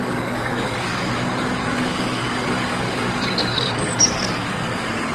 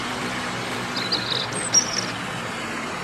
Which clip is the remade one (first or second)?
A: first